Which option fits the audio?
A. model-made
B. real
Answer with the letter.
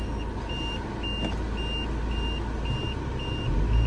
B